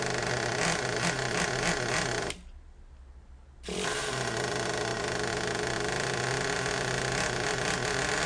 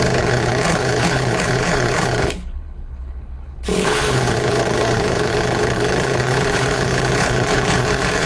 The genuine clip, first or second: first